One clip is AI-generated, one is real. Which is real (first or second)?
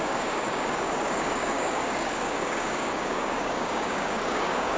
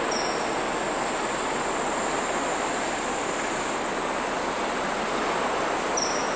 second